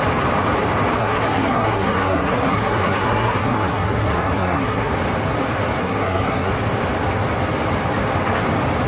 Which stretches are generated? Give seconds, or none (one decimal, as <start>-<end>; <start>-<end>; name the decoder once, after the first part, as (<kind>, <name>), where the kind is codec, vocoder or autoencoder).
1.0-4.9 (codec, SNAC); 5.8-6.5